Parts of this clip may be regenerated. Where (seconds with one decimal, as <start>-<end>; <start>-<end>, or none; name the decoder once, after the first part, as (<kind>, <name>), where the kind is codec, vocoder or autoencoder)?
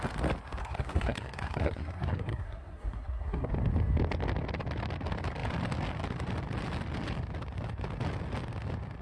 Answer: 0.6-3.5 (codec, SNAC)